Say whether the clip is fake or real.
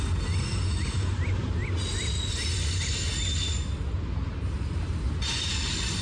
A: real